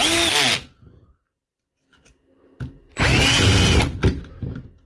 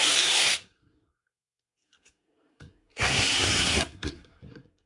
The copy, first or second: second